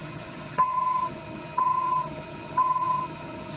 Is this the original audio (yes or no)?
no